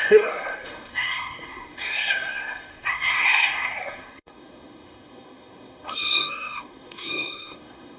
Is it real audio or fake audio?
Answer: fake